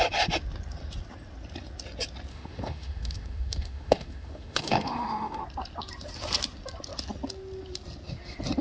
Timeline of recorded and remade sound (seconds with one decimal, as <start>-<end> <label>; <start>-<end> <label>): 0.0-2.3 recorded; 2.3-5.4 remade; 5.4-8.6 recorded